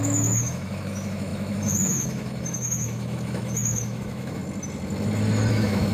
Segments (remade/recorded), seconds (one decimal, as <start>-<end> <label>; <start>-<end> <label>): 0.0-4.4 remade; 4.4-5.5 recorded; 5.5-5.9 remade